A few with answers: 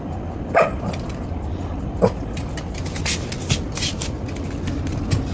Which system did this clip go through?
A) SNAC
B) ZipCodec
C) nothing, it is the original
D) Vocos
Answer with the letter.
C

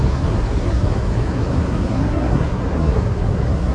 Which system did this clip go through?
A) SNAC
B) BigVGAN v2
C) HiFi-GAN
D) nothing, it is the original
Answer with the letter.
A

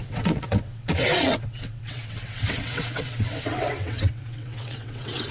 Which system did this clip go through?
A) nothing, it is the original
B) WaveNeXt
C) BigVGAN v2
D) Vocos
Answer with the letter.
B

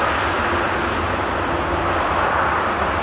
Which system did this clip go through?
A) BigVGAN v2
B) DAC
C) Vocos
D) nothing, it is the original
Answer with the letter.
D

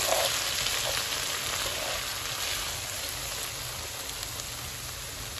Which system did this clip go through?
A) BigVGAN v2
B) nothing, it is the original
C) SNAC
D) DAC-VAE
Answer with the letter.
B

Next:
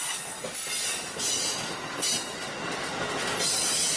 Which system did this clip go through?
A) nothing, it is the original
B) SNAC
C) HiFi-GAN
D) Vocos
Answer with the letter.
A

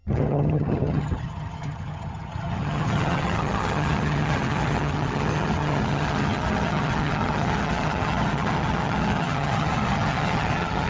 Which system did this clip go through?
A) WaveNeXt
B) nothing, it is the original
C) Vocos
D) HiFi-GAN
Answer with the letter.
D